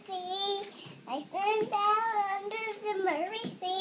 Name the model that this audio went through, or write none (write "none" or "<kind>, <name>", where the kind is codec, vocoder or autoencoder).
none